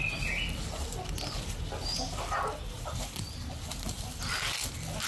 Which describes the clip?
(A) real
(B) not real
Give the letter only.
A